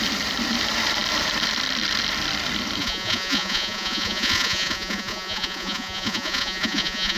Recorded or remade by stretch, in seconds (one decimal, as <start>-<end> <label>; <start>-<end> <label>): 0.0-2.8 recorded; 2.8-7.2 remade